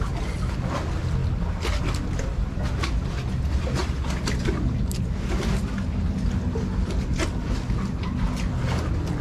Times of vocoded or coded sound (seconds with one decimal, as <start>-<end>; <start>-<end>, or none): none

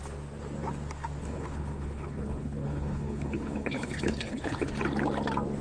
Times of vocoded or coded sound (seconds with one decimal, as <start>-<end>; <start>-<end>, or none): 1.2-4.6

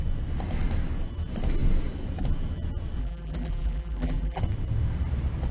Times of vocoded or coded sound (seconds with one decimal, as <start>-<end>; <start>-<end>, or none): 3.0-4.4

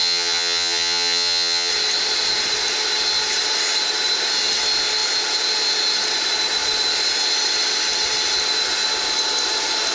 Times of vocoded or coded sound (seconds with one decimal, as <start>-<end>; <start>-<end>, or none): 0.0-1.7

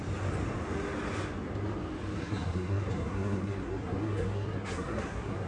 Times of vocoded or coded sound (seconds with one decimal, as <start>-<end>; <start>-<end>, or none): 2.2-5.5

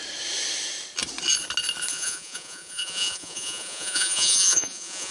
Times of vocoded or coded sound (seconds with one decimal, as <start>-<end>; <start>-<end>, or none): 1.9-5.1

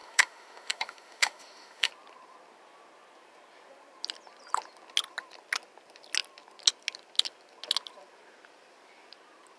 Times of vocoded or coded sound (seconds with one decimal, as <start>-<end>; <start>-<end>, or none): 0.0-1.9